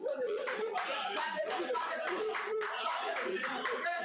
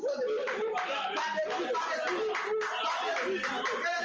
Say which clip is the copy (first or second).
first